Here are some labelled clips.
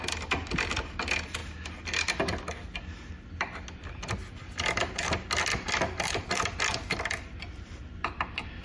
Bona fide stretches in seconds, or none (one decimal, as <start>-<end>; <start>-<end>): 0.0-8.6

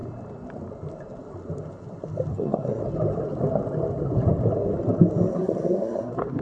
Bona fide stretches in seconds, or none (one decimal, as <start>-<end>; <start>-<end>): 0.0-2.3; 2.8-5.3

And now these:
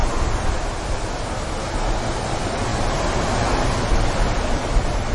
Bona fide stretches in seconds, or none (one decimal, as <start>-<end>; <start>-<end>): 0.0-5.1

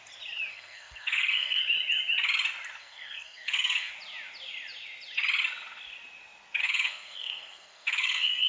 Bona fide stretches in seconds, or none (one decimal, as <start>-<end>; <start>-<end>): 0.0-0.5; 1.6-2.8; 3.9-6.6

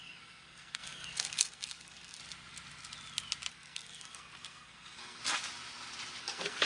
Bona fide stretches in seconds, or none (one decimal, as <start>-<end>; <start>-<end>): 2.2-3.5; 5.2-6.2